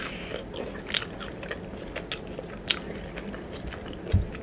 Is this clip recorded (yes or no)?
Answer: yes